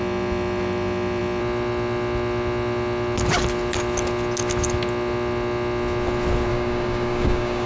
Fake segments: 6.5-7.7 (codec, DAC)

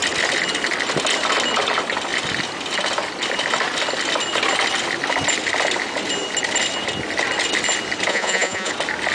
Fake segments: 8.1-8.7 (vocoder, Vocos)

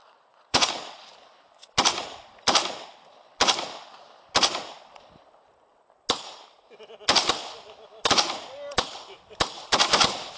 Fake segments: 0.0-0.7 (vocoder, Vocos)

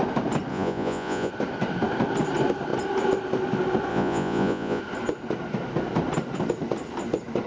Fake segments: 0.5-1.3 (vocoder, Vocos); 3.9-4.8

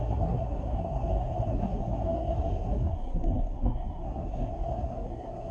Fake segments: 0.0-5.5 (codec, SNAC)

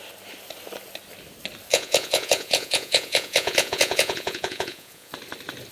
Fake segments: 1.7-5.1 (vocoder, Vocos)

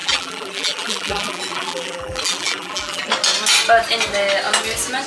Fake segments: 0.0-3.1 (vocoder, BigVGAN v2)